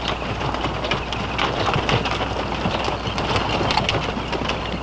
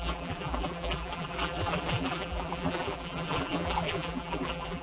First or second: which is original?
first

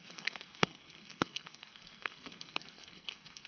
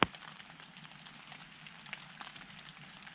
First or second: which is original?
second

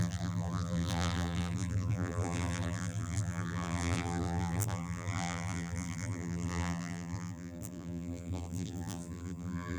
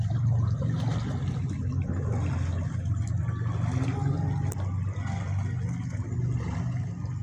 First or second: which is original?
second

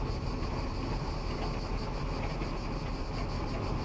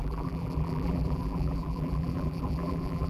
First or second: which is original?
first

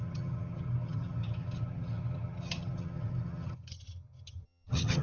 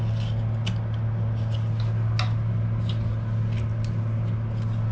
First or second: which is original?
second